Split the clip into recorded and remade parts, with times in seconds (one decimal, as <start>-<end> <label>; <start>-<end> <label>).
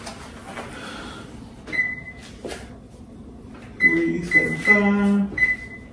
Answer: 0.0-2.2 remade; 2.2-5.9 recorded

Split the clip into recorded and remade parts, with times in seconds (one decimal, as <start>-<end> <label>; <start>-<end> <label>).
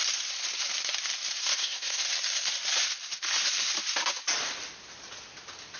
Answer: 0.0-1.4 recorded; 1.4-2.0 remade; 2.0-5.8 recorded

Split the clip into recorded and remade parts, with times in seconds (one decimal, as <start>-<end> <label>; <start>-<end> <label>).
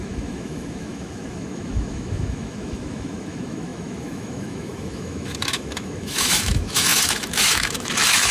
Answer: 0.0-8.3 remade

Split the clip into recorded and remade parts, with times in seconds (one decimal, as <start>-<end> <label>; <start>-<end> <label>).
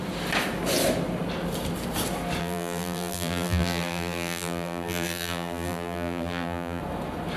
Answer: 0.0-2.4 recorded; 2.4-6.8 remade; 6.8-7.4 recorded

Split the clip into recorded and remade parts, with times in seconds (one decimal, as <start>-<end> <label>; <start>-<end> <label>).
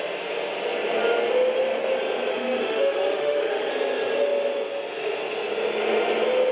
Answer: 0.0-2.3 recorded; 2.3-3.7 remade; 3.7-6.5 recorded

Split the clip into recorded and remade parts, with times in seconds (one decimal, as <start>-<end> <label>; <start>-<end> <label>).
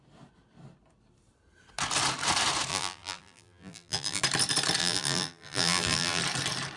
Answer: 0.0-2.7 recorded; 2.7-4.2 remade; 4.2-4.8 recorded; 4.8-6.2 remade; 6.2-6.8 recorded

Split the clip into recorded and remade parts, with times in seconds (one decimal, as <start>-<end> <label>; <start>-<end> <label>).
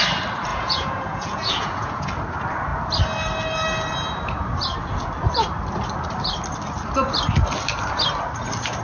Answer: 0.0-0.5 recorded; 0.5-2.1 remade; 2.1-8.8 recorded